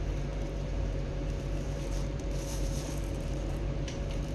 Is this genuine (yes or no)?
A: no